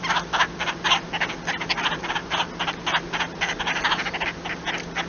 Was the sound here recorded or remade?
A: recorded